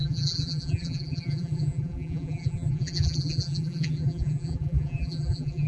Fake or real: fake